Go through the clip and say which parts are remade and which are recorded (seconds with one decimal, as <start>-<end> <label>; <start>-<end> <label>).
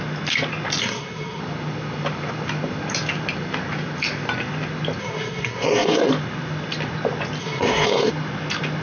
0.0-0.8 recorded; 0.8-1.4 remade; 1.4-5.0 recorded; 5.0-6.1 remade; 6.1-7.4 recorded; 7.4-8.1 remade; 8.1-8.8 recorded